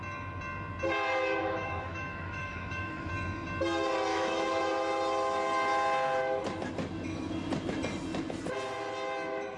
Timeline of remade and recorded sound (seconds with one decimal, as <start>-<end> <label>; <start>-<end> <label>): 0.0-1.4 recorded; 1.4-3.1 remade; 3.1-4.1 recorded; 4.1-4.6 remade; 4.6-9.6 recorded